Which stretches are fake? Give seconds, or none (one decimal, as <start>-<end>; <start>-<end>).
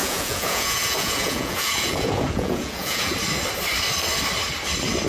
0.0-3.1